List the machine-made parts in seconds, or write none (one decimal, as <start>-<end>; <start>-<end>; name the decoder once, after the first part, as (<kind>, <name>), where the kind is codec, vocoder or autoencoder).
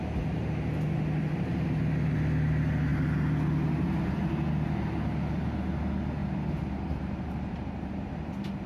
6.2-8.1 (vocoder, BigVGAN v2)